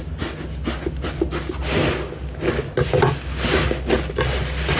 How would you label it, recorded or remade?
recorded